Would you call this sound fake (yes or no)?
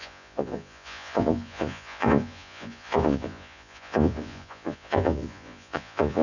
yes